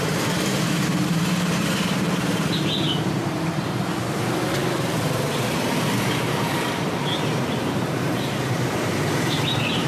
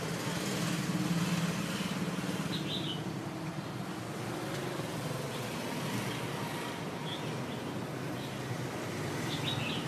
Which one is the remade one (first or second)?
first